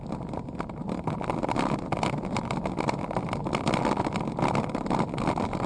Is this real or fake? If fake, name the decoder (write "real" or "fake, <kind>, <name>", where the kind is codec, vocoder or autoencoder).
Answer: real